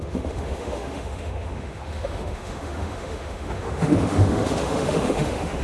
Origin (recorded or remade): remade